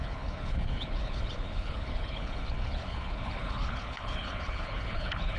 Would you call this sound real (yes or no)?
no